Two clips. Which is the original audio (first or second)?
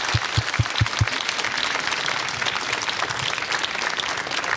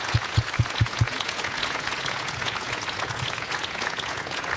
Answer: first